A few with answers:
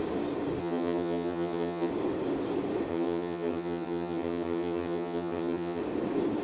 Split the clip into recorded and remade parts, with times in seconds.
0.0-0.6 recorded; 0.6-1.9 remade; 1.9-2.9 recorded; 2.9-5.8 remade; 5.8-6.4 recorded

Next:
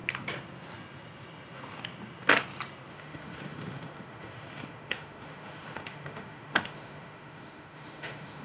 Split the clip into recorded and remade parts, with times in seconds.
0.0-2.9 recorded; 2.9-8.4 remade